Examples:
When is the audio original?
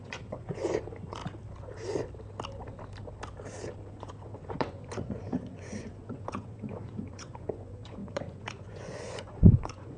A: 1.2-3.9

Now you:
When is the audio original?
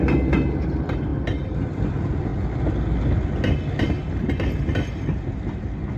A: 0.0-6.0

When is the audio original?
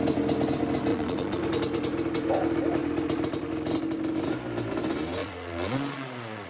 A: 0.0-0.9; 1.4-5.2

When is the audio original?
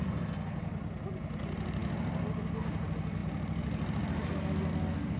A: 0.0-5.2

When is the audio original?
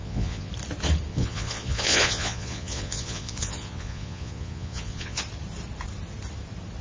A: 0.5-1.1; 5.2-6.8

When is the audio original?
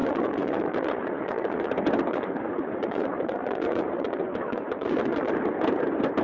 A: 1.7-2.1; 5.3-6.2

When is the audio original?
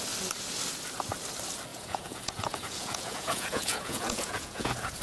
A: 0.0-1.7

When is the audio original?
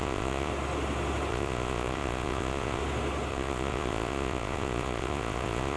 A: 0.5-1.3; 2.8-3.3